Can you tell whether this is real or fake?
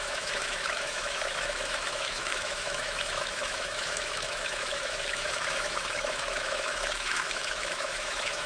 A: fake